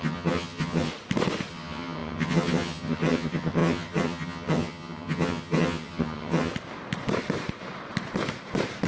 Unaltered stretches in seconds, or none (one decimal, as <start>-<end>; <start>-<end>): 0.9-1.5; 6.5-8.9